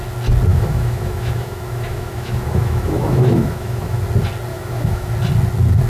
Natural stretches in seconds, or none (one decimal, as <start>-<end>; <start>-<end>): 0.0-0.5; 4.0-4.5; 5.1-5.9